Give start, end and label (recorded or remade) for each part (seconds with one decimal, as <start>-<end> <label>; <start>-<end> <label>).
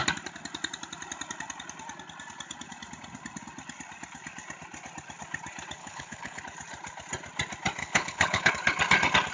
0.0-5.8 recorded; 5.8-6.4 remade; 6.4-7.8 recorded; 7.8-8.5 remade; 8.5-9.3 recorded